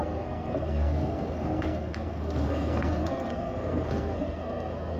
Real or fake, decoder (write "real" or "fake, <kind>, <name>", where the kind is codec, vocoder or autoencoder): fake, codec, SNAC